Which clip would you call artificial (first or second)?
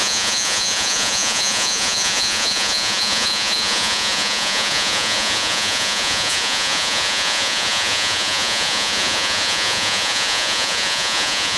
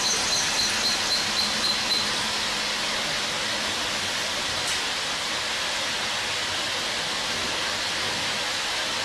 first